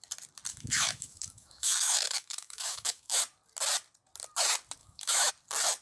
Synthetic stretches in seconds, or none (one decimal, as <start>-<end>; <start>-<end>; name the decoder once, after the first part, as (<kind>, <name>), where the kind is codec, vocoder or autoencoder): 0.5-3.2 (autoencoder, DAC-VAE); 4.8-5.3